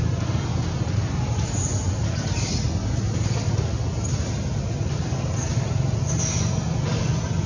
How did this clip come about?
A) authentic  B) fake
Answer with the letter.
A